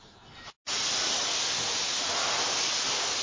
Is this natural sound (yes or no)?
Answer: yes